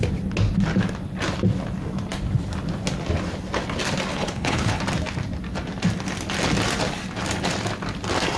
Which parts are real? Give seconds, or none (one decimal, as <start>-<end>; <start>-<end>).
0.0-4.1; 4.8-8.4